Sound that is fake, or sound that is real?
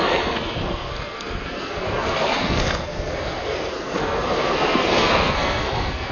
fake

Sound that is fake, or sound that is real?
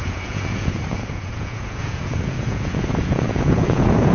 fake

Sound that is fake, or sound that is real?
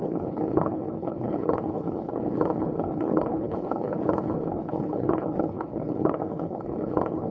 fake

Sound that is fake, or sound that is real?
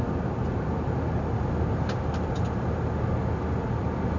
real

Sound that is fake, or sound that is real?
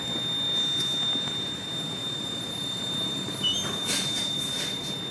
real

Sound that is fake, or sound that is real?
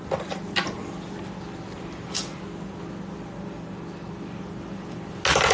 real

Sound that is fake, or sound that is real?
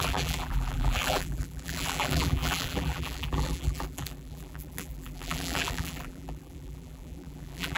fake